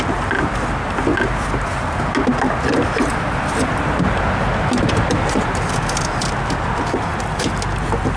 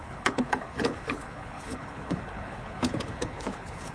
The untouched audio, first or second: first